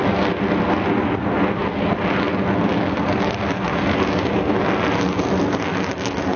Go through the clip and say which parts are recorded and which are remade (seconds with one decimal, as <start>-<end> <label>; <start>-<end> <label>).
0.0-6.4 recorded